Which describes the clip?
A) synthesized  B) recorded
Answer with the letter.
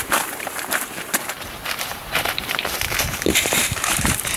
A